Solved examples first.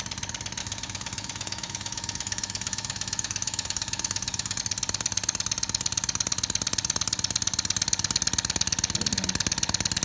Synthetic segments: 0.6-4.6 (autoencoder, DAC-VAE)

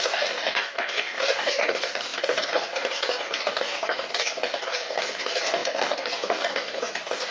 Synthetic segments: 0.0-7.3 (codec, DAC)